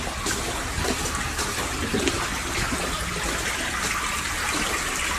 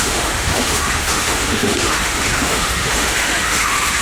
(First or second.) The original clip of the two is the first